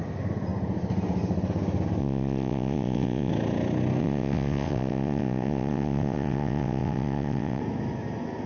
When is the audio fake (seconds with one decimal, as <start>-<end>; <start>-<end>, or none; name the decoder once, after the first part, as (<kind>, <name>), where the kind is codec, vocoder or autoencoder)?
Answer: 2.0-3.3 (vocoder, WaveNeXt); 4.0-7.6